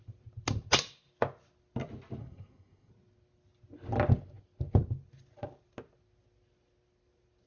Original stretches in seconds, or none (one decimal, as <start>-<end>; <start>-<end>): 0.0-2.2; 2.9-7.5